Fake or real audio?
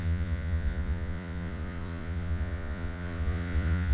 fake